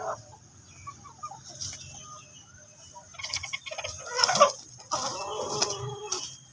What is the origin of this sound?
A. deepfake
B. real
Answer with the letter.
B